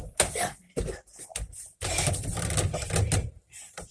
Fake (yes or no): no